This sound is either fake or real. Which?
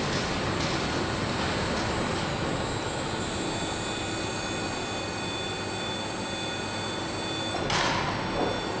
real